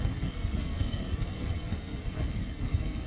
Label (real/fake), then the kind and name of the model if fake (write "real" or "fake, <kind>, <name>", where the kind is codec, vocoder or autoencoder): fake, codec, SNAC